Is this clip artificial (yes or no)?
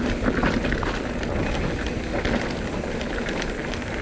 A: no